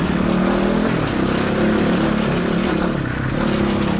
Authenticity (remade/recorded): recorded